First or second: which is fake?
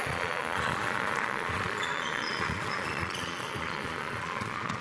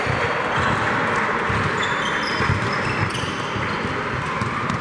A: first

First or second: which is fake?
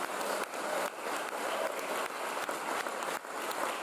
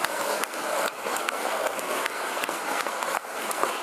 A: second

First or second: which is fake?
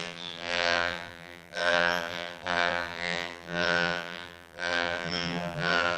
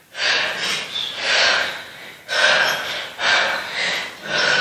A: first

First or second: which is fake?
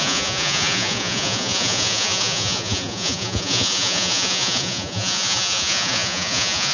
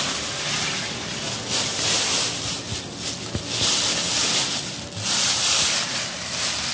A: first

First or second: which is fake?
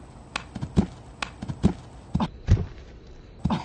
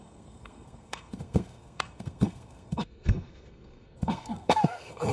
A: second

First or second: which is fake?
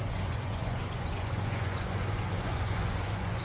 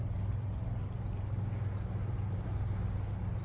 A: first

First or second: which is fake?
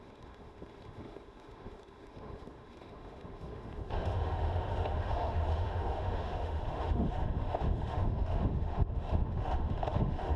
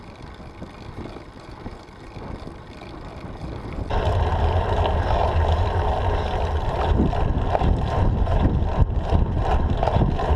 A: first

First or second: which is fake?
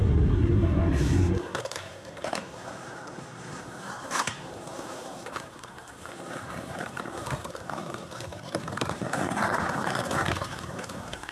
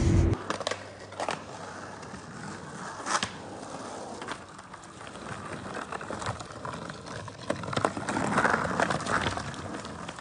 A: first